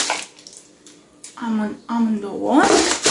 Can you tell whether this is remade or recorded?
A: recorded